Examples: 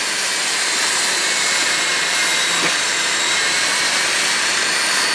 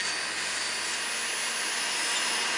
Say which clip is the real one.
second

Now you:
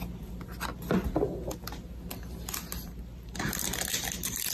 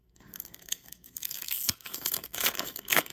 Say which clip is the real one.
first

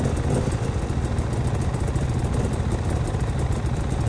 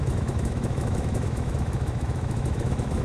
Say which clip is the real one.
first